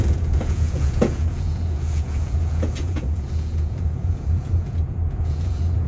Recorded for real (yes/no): no